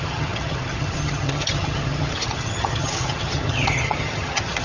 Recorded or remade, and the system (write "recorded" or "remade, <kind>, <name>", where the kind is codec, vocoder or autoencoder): remade, vocoder, HiFi-GAN